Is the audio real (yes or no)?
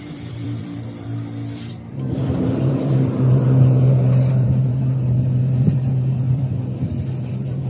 no